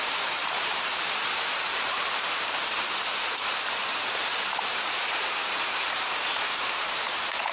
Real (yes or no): no